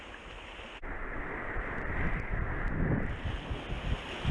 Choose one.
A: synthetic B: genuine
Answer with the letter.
B